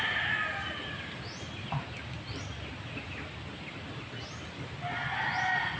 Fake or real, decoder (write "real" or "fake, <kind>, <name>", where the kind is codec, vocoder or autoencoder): real